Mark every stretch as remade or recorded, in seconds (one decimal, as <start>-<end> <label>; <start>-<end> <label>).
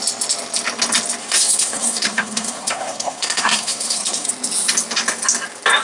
0.0-1.2 recorded; 1.2-4.3 remade; 4.3-5.8 recorded